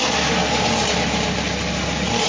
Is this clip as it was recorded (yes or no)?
yes